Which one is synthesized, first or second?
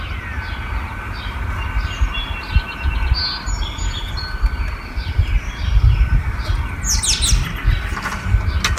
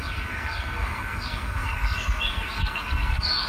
second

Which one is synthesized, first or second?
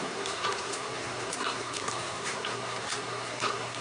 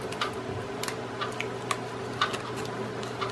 first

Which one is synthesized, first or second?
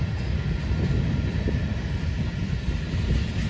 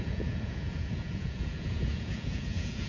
second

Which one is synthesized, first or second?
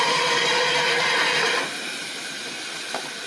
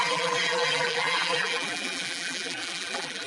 second